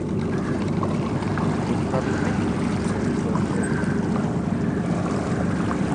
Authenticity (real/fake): real